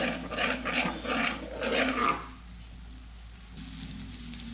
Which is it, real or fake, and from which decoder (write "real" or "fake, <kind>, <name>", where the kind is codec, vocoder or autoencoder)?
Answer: real